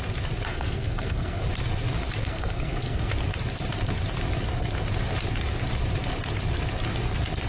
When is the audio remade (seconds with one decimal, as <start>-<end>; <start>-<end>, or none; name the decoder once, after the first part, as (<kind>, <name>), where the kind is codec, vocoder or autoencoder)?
0.5-1.4 (codec, SNAC); 2.2-3.1